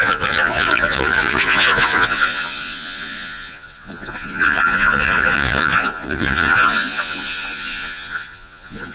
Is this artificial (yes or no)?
yes